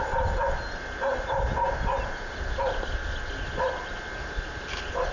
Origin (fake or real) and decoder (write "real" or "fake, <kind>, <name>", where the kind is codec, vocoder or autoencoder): real